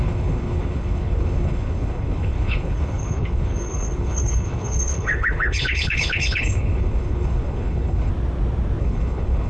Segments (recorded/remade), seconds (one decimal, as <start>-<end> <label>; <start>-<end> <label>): 0.0-8.1 remade; 8.1-8.8 recorded; 8.8-9.5 remade